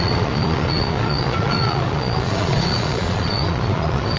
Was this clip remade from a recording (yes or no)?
yes